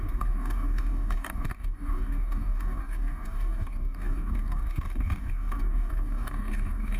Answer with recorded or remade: remade